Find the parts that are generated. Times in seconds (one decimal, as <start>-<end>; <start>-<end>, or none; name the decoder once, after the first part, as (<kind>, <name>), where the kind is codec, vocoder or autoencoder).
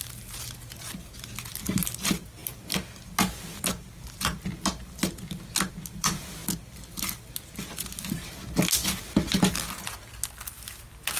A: none